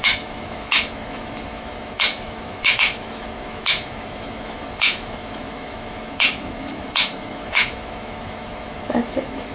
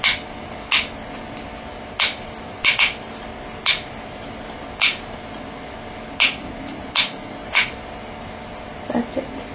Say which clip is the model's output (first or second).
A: first